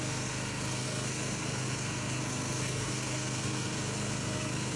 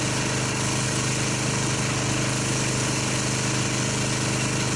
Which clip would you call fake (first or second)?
first